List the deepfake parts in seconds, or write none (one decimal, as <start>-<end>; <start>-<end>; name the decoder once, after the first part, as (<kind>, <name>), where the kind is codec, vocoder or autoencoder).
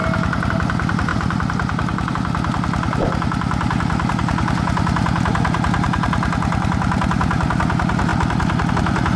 none